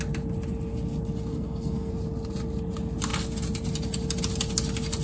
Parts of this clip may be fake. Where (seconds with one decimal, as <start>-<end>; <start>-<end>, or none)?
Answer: 1.3-1.9